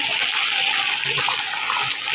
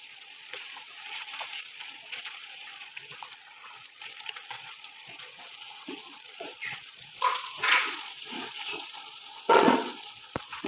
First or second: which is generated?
second